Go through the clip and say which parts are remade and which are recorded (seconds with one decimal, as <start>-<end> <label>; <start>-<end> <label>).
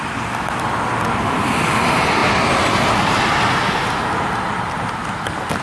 0.0-5.6 recorded